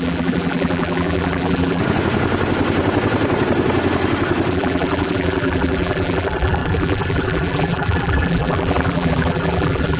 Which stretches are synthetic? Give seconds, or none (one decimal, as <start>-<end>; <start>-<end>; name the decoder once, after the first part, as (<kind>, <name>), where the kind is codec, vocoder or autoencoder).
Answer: 0.0-1.8 (vocoder, BigVGAN v2); 4.5-10.0